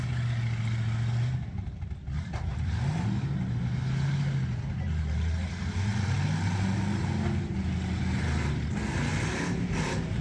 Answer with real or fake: real